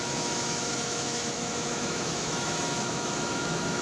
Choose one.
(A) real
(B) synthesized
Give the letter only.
B